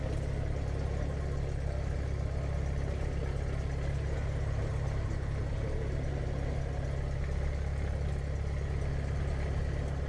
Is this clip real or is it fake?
real